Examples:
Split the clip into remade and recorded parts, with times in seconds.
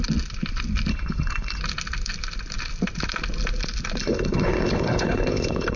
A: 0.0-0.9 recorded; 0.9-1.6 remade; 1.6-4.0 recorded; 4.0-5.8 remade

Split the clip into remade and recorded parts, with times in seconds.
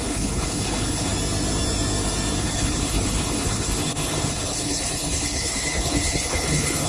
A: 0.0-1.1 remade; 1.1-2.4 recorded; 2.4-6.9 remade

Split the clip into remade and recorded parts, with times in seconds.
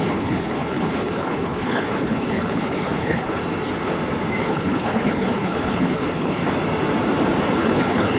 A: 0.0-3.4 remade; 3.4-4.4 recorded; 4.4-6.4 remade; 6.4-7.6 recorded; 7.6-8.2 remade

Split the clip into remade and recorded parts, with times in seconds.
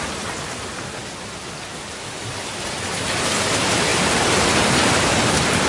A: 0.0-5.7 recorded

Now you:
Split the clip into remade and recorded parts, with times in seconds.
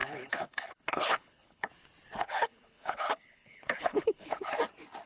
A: 0.0-1.7 remade; 1.7-2.2 recorded; 2.2-4.5 remade; 4.5-5.1 recorded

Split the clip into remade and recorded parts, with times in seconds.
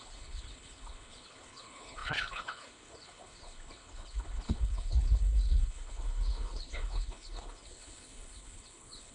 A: 0.0-9.1 remade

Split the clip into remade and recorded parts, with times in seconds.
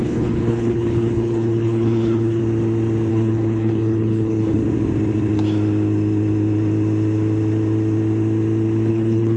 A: 0.0-2.4 remade; 2.4-3.1 recorded; 3.1-4.6 remade; 4.6-8.9 recorded; 8.9-9.4 remade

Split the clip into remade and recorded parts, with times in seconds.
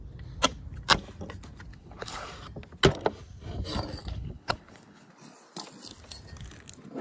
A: 0.0-1.7 recorded; 1.7-2.3 remade; 2.3-4.0 recorded; 4.0-5.1 remade; 5.1-7.0 recorded